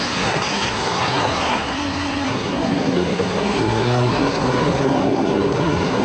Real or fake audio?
fake